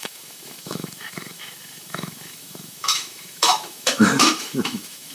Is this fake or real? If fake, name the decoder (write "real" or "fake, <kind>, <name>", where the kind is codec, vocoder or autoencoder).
fake, autoencoder, DAC-VAE